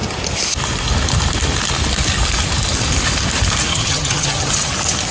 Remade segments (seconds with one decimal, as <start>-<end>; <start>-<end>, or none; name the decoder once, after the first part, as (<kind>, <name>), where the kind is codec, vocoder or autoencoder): 3.7-4.5 (vocoder, HiFi-GAN)